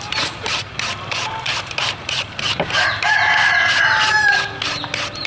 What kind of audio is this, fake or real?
real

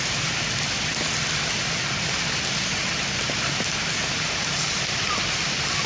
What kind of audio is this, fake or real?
real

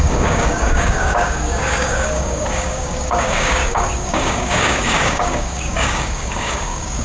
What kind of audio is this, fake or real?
fake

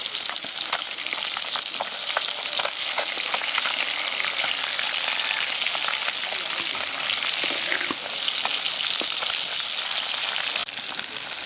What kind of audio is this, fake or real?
real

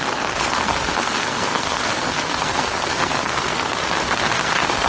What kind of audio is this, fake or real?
fake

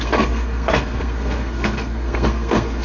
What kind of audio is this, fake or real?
fake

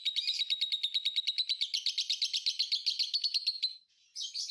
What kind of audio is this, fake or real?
real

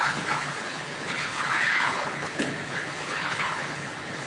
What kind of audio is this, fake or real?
fake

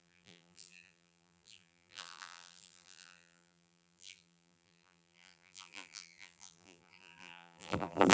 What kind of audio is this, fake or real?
fake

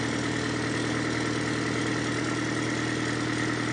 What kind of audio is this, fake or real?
real